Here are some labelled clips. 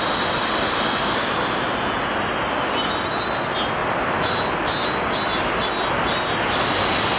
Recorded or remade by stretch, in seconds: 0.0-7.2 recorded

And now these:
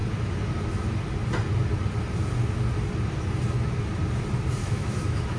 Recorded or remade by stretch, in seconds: 0.0-4.6 recorded; 4.6-5.4 remade

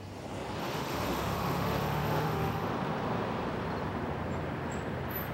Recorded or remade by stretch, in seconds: 0.0-0.6 recorded; 0.6-2.7 remade; 2.7-5.3 recorded

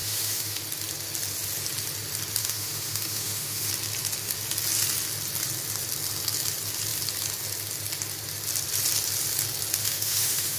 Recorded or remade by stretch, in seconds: 0.0-0.6 remade; 0.6-2.4 recorded; 2.4-3.7 remade; 3.7-9.8 recorded; 9.8-10.6 remade